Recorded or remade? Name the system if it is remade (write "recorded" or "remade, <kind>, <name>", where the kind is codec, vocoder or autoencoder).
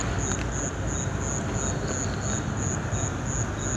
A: recorded